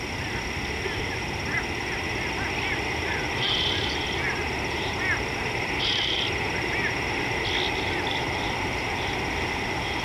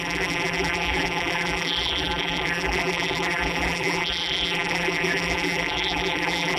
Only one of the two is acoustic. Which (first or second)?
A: first